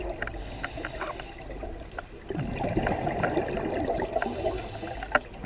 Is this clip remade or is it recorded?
recorded